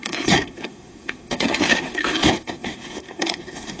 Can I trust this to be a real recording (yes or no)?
no